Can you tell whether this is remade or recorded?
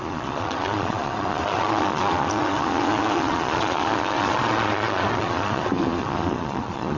remade